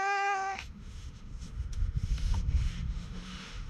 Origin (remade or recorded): remade